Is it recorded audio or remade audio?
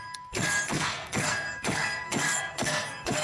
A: remade